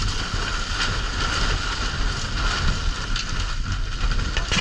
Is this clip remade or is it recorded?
recorded